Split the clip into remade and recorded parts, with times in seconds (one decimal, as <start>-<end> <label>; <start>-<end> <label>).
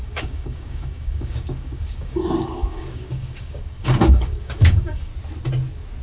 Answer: 0.0-5.1 remade; 5.1-6.0 recorded